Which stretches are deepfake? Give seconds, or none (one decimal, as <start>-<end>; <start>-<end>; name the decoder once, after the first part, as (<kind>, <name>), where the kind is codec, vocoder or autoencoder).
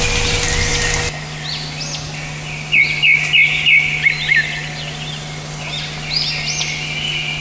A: none